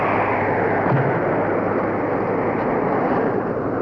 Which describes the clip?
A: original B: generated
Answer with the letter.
A